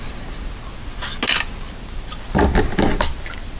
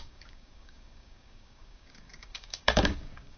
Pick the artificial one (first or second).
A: second